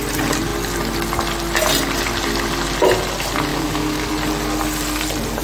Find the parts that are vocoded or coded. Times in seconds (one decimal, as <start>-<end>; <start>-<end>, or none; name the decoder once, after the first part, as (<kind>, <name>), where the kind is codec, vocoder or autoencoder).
3.5-4.1 (codec, DAC)